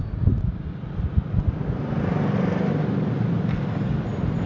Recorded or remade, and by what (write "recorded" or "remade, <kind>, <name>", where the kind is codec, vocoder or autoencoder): recorded